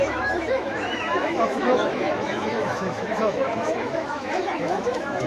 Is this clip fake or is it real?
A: fake